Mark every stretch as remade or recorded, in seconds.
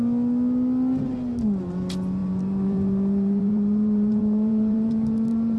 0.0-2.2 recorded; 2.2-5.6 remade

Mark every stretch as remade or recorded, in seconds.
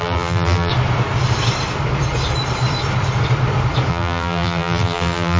0.0-0.7 remade; 0.7-3.9 recorded; 3.9-5.4 remade